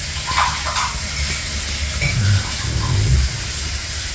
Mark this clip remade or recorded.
recorded